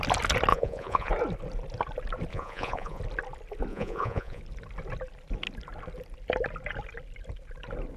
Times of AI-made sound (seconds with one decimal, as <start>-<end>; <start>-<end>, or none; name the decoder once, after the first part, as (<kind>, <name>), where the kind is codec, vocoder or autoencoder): 0.5-1.1 (vocoder, Vocos); 2.3-3.0; 3.7-4.4